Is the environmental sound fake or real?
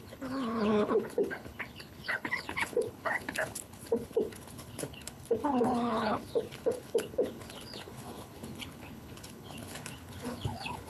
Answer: fake